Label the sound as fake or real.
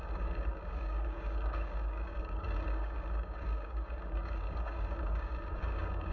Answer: fake